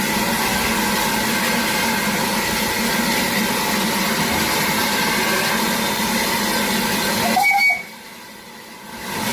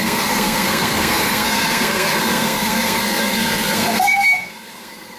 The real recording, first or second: first